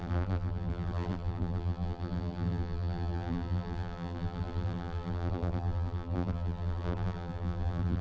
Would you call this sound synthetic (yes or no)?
yes